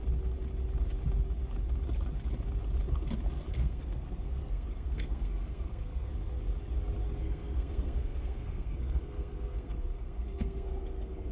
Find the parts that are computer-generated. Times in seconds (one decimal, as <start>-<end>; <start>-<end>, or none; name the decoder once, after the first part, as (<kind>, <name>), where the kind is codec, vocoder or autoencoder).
3.5-6.1 (codec, SNAC); 7.2-11.3